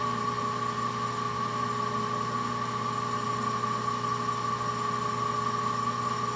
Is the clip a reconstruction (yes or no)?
no